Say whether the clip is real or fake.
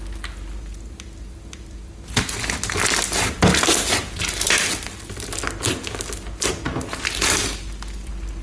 real